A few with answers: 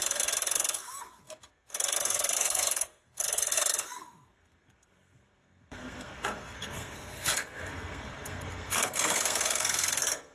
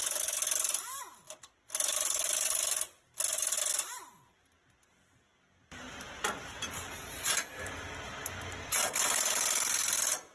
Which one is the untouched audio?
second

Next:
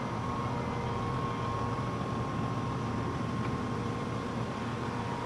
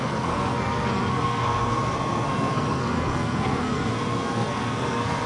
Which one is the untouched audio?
first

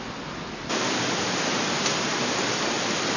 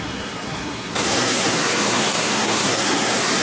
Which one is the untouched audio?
first